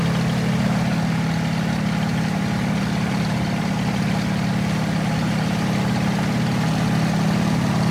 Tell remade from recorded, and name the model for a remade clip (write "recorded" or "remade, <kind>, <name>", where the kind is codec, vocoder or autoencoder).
recorded